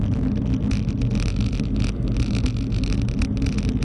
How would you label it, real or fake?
real